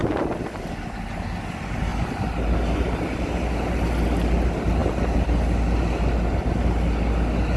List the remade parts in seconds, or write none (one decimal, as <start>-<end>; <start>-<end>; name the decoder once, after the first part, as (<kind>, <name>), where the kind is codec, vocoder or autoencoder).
none